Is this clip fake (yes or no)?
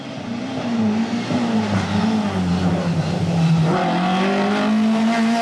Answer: no